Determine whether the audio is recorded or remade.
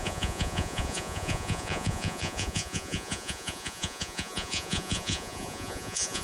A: remade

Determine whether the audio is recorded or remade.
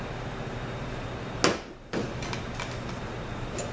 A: recorded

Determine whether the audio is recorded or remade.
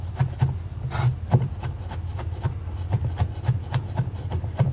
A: remade